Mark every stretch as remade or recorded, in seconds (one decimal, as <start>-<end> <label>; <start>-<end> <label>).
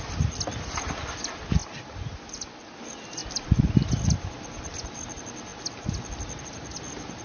0.0-1.6 remade; 1.6-2.8 recorded; 2.8-5.5 remade; 5.5-6.4 recorded; 6.4-7.2 remade